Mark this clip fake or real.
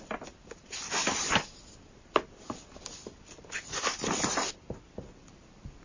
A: fake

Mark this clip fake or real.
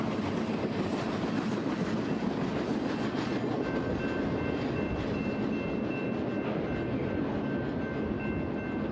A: real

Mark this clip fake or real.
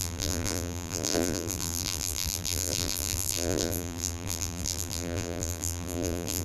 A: fake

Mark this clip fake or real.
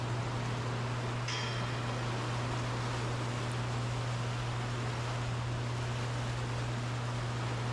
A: real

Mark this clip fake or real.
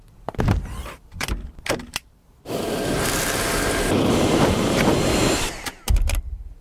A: fake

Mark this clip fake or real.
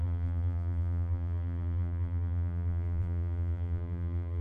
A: fake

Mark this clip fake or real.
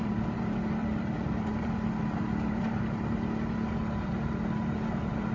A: fake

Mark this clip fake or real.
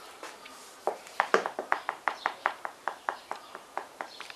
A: fake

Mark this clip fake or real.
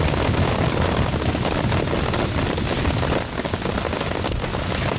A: real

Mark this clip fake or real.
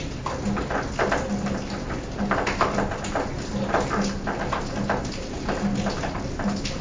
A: real